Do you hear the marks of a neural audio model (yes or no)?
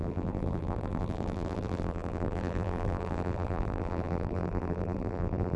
yes